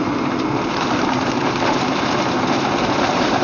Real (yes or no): no